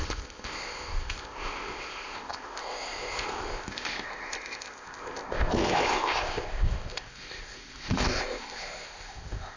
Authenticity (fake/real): fake